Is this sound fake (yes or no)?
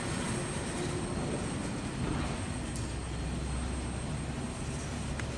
no